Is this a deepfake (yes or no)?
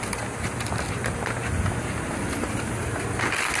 no